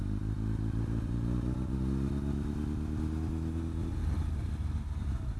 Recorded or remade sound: recorded